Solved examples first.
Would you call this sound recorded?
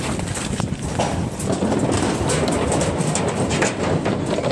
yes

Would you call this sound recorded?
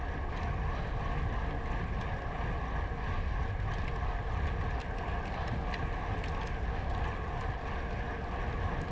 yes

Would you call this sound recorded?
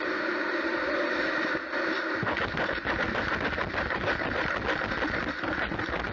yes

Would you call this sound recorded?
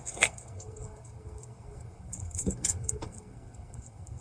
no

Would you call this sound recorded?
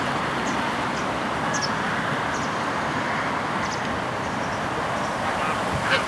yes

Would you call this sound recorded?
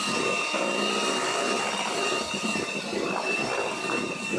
yes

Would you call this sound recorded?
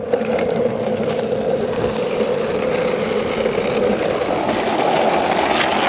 yes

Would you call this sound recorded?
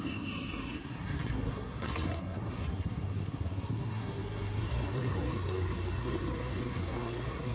no